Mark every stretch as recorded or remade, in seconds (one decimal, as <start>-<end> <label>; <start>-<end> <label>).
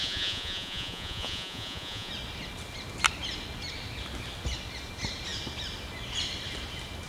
0.0-2.1 remade; 2.1-7.1 recorded